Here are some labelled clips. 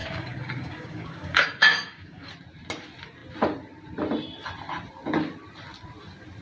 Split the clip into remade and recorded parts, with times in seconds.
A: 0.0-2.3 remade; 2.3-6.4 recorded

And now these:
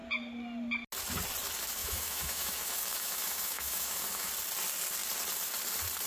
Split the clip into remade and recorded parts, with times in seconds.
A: 0.0-1.8 recorded; 1.8-4.3 remade; 4.3-6.1 recorded

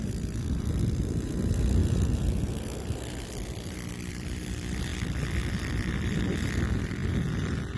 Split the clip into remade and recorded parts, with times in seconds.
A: 0.0-1.8 remade; 1.8-4.1 recorded; 4.1-4.9 remade; 4.9-5.7 recorded; 5.7-7.0 remade; 7.0-7.8 recorded

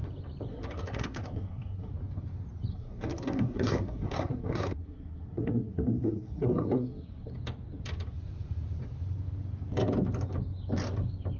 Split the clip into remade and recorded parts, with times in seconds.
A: 0.0-0.5 recorded; 0.5-1.9 remade; 1.9-2.7 recorded; 2.7-7.3 remade; 7.3-11.4 recorded

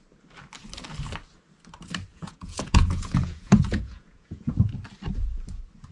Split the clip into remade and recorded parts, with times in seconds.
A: 0.0-2.1 recorded; 2.1-4.7 remade; 4.7-5.9 recorded

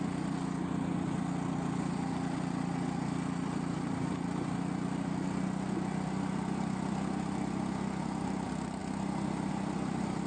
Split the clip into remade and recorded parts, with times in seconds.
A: 0.0-10.3 recorded